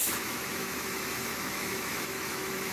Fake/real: fake